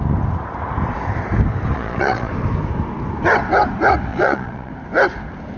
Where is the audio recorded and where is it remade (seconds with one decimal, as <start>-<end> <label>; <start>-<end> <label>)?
0.0-1.7 recorded; 1.7-2.3 remade; 2.3-4.1 recorded; 4.1-4.7 remade; 4.7-5.6 recorded